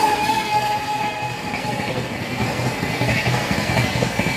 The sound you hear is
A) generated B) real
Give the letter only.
A